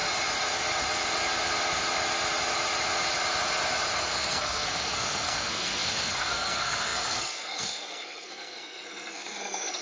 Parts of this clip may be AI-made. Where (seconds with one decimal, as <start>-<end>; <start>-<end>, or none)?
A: 4.0-9.8